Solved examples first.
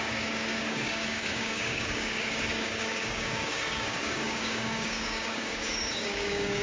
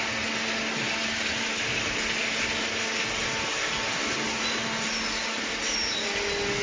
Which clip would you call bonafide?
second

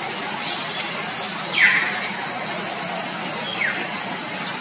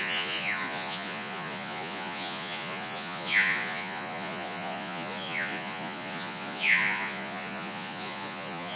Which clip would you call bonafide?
first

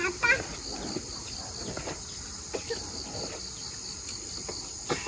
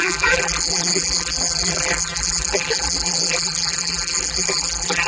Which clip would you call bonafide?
first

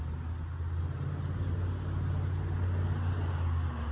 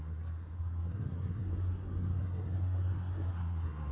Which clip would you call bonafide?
first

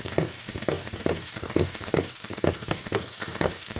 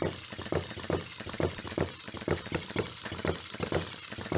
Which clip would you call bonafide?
second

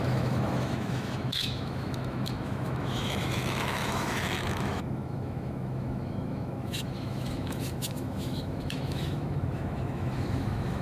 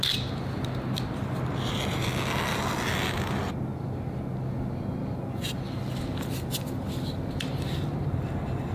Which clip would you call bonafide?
second